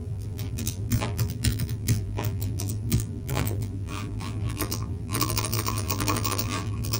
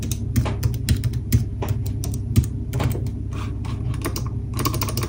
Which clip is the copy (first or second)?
first